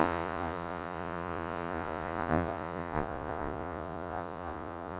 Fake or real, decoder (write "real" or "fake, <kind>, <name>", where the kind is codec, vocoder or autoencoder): fake, vocoder, Vocos